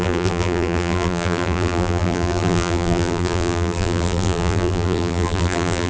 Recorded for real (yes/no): no